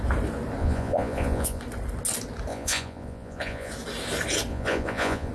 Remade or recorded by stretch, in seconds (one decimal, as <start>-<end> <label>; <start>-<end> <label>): 0.0-0.6 recorded; 0.6-1.6 remade; 1.6-2.5 recorded; 2.5-3.7 remade; 3.7-4.5 recorded; 4.5-5.3 remade